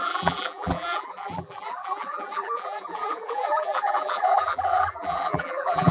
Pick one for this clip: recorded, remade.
remade